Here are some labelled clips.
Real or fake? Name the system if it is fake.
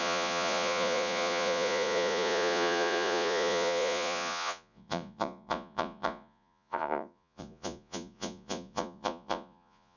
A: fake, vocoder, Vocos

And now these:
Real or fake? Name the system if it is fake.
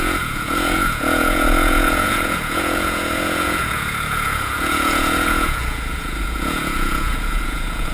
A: fake, vocoder, Vocos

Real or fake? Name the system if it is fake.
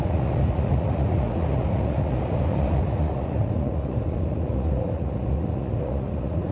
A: fake, vocoder, Vocos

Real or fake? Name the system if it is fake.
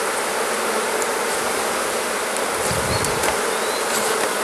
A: real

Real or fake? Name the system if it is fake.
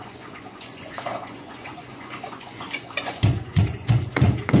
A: fake, vocoder, Vocos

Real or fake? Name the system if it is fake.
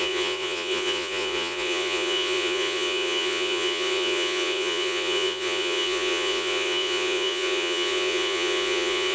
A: fake, vocoder, Vocos